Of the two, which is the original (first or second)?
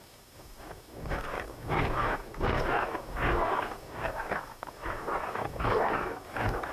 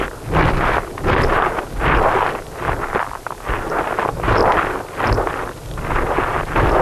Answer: second